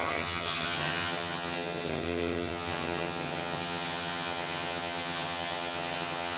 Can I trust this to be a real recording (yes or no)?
no